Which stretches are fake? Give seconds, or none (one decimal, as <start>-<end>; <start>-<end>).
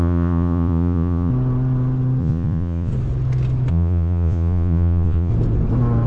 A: 0.0-1.3; 2.2-2.9; 3.7-5.3